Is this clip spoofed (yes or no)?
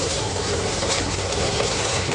yes